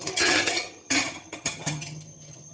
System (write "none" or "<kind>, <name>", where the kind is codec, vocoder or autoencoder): vocoder, HiFi-GAN